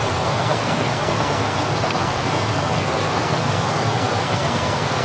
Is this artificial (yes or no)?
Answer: yes